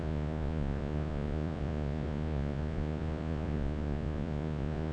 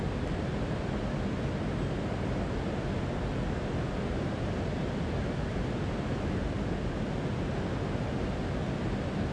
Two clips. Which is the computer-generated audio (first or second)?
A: first